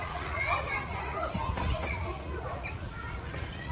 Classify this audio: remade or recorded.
remade